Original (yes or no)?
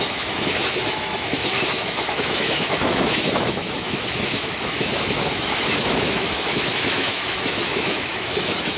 no